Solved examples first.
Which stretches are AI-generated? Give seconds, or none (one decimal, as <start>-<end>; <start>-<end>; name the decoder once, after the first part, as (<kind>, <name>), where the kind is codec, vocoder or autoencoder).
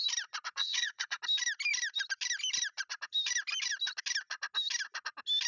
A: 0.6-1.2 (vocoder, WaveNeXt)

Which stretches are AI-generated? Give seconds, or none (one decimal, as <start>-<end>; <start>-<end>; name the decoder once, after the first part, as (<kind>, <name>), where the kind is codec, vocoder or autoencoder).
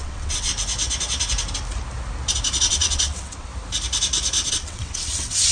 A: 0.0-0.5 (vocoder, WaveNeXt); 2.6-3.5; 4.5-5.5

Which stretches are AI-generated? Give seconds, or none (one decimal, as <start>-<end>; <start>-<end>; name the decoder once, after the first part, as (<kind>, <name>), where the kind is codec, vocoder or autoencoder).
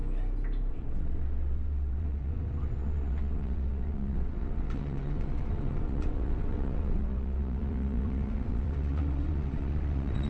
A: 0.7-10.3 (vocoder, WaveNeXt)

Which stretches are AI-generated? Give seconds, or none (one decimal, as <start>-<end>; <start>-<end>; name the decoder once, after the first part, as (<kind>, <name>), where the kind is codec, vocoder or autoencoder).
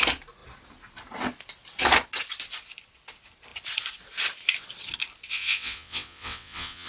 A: 5.3-6.9 (vocoder, WaveNeXt)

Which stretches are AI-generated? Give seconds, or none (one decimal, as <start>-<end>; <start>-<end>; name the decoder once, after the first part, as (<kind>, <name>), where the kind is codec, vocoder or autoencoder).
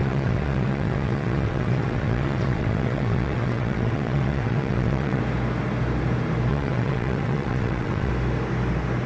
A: 0.0-5.2 (vocoder, WaveNeXt); 6.5-8.1